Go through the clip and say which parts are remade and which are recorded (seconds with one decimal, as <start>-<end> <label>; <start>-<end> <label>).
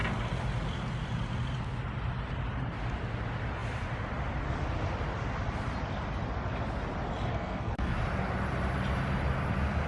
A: 0.0-7.3 recorded; 7.3-7.9 remade; 7.9-9.9 recorded